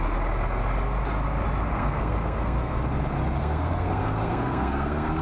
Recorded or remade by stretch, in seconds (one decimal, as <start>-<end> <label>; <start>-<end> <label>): 0.0-1.7 recorded; 1.7-2.8 remade; 2.8-3.4 recorded; 3.4-5.2 remade